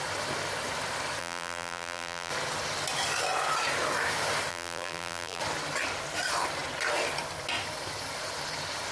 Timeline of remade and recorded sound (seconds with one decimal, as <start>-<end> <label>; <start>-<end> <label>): 0.0-1.2 recorded; 1.2-2.3 remade; 2.3-4.5 recorded; 4.5-5.4 remade; 5.4-8.9 recorded